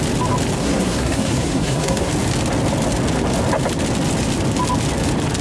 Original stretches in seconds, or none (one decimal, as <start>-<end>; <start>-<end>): 0.0-0.6; 2.1-5.4

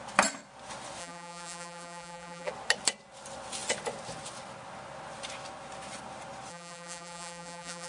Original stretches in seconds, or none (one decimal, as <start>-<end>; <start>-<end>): 0.0-1.0; 2.5-6.5

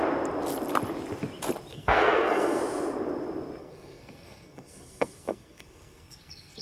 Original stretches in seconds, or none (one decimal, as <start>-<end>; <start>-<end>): 0.0-1.7; 2.6-3.6

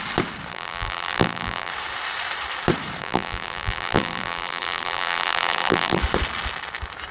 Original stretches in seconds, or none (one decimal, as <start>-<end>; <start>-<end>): 0.0-0.5; 1.7-3.0; 6.0-7.1

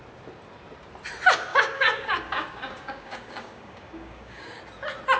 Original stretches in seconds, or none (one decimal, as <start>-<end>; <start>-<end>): 0.0-1.5; 4.6-5.2

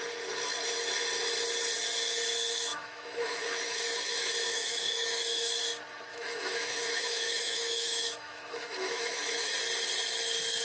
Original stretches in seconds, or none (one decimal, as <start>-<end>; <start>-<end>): 0.0-2.7; 5.6-6.1; 9.5-10.6